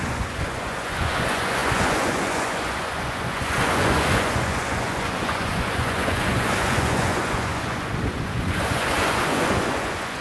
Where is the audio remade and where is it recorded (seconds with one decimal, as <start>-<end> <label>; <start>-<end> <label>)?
0.0-10.2 remade